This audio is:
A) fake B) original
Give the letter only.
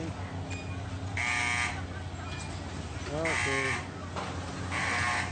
B